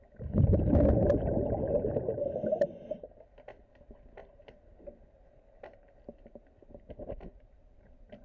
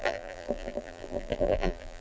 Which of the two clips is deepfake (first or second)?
second